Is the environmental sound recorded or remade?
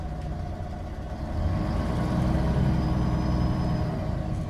recorded